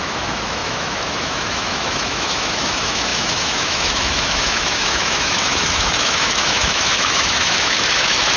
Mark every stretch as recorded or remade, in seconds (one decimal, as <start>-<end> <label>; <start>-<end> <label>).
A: 0.0-8.4 remade